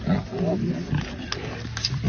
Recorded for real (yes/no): yes